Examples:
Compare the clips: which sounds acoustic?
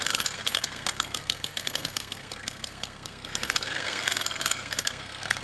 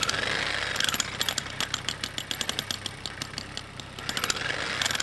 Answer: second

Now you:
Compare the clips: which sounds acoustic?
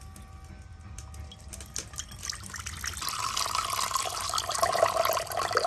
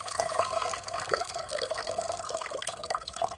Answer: first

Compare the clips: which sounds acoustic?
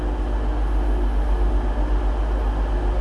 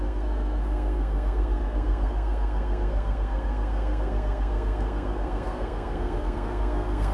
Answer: first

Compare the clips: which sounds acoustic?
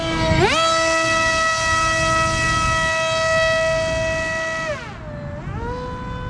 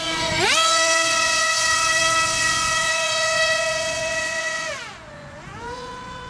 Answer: first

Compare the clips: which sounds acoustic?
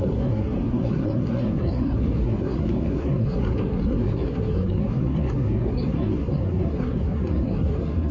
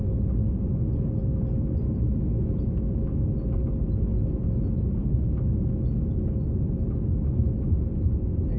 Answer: second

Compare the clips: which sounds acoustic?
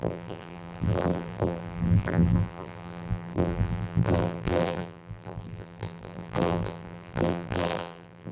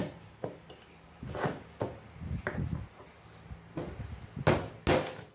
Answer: second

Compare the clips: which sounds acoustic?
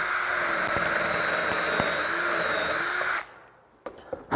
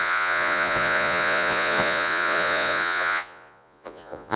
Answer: first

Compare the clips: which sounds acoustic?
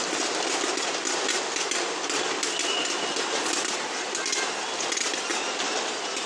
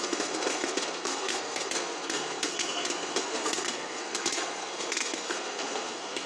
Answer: first